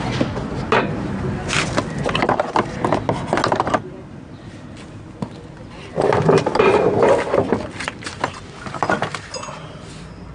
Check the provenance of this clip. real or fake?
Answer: real